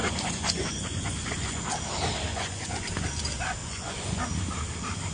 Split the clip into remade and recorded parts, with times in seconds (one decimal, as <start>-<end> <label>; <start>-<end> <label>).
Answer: 0.0-1.6 remade; 1.6-2.3 recorded; 2.3-2.9 remade; 2.9-3.6 recorded; 3.6-4.2 remade; 4.2-5.1 recorded